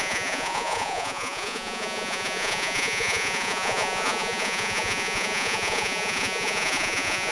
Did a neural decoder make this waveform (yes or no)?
yes